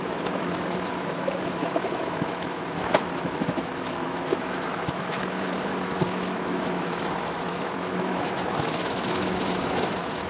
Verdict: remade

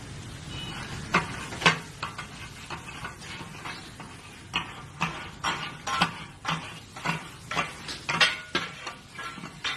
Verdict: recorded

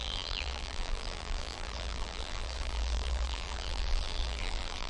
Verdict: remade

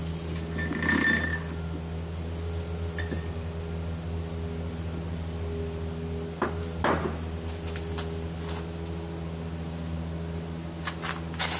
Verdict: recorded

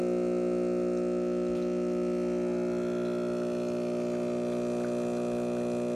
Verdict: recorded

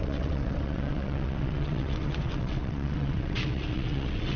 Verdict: remade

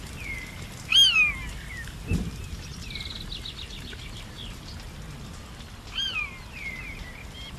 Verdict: recorded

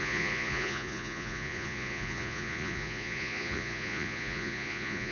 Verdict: remade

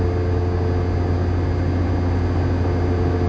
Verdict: recorded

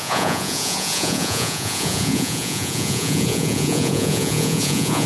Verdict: remade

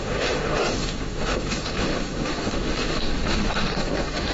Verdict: remade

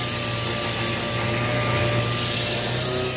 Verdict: recorded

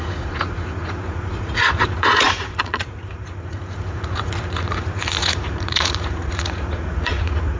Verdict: remade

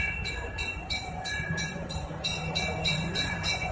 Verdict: remade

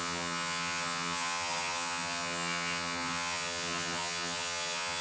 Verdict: remade